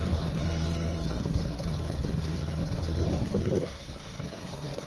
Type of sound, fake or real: fake